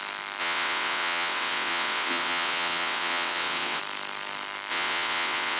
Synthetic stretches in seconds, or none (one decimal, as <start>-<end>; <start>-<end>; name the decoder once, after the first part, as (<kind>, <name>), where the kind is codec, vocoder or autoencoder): 0.4-3.8 (vocoder, WaveNeXt); 4.7-5.6